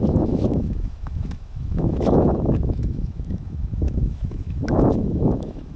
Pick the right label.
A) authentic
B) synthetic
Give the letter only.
B